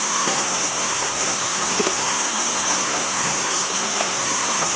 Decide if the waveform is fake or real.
fake